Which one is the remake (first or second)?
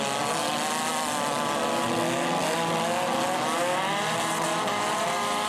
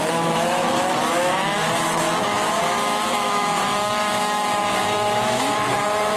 second